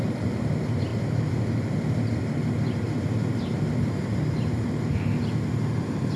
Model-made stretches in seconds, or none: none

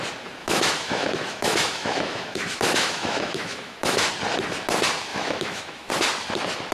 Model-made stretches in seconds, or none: 0.4-4.1; 5.1-5.9